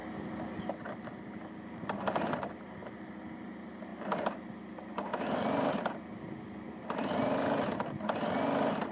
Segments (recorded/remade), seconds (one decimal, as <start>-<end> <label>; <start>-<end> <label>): 0.0-0.7 recorded; 0.7-3.9 remade; 3.9-4.9 recorded; 4.9-8.9 remade